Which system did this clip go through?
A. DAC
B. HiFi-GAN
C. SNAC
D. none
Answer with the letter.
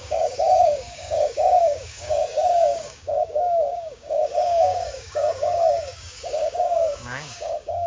A